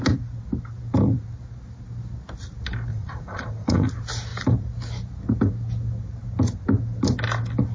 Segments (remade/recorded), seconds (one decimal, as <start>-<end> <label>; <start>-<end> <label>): 0.0-2.9 recorded; 2.9-3.9 remade; 3.9-7.7 recorded